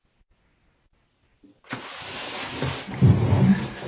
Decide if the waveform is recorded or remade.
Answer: recorded